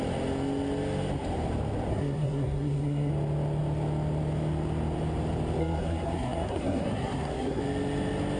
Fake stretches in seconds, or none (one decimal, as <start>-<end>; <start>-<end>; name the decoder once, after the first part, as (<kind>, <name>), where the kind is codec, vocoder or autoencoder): 1.9-3.1 (codec, SNAC); 5.6-7.6